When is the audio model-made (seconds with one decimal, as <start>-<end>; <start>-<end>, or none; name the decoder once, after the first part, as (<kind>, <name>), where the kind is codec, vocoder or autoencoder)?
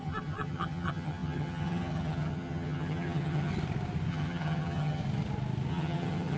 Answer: 0.0-3.5 (vocoder, HiFi-GAN); 4.1-5.0; 5.7-6.4